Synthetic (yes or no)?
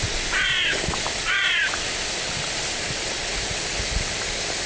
no